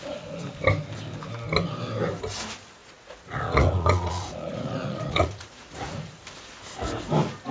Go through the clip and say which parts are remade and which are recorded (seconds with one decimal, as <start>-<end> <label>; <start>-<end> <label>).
0.0-2.8 recorded; 2.8-6.2 remade; 6.2-7.5 recorded